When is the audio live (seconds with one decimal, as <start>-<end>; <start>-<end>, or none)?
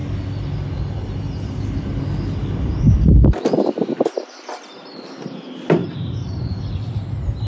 0.0-5.8; 6.6-7.5